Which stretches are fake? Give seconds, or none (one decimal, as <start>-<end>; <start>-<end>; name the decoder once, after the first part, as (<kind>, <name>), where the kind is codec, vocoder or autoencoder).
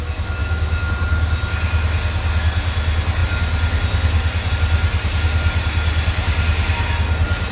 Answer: 0.4-0.9 (autoencoder, DAC-VAE)